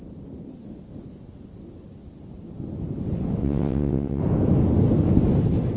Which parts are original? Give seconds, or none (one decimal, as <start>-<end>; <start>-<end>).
0.0-3.4; 4.2-5.8